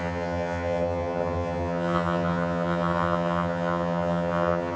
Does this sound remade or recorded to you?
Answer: remade